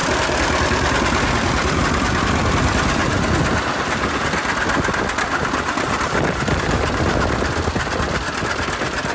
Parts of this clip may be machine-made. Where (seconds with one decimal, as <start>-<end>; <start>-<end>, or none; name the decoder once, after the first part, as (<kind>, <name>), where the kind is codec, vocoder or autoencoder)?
0.0-9.1 (vocoder, BigVGAN v2)